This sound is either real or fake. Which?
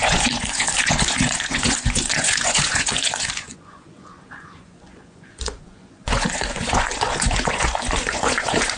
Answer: fake